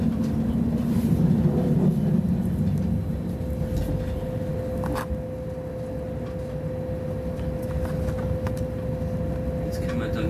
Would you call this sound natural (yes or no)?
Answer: yes